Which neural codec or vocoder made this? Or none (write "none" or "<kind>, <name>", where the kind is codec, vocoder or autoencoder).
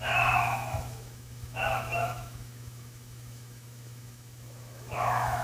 autoencoder, DAC-VAE